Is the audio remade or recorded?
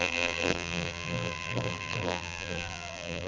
remade